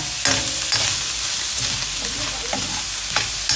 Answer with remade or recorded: recorded